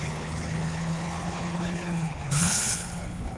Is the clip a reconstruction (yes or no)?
yes